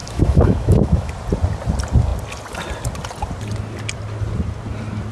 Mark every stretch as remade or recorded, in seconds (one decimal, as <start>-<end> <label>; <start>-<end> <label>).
0.0-1.1 remade; 1.1-5.1 recorded